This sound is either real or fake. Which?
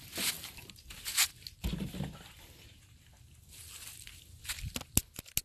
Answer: real